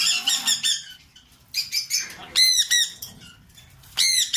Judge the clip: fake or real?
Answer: real